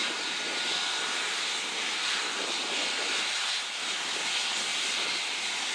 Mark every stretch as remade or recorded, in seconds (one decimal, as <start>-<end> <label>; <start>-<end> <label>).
0.0-2.6 remade; 2.6-4.7 recorded; 4.7-5.2 remade; 5.2-5.7 recorded